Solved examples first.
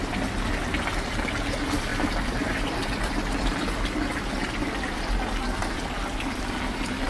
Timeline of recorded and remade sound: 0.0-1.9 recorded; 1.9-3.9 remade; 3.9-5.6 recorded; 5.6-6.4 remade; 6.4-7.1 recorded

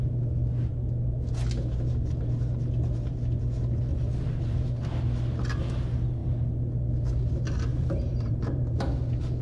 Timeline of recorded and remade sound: 0.0-3.9 recorded; 3.9-4.7 remade; 4.7-7.7 recorded; 7.7-8.8 remade; 8.8-9.4 recorded

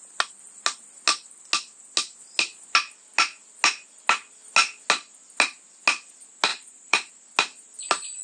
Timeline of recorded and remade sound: 0.0-6.5 recorded; 6.5-7.1 remade; 7.1-8.2 recorded

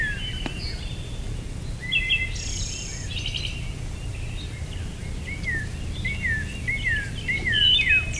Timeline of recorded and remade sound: 0.0-8.2 recorded